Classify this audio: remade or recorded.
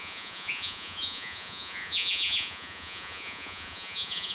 remade